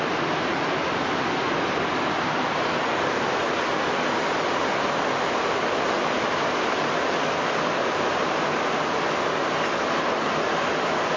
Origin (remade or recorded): recorded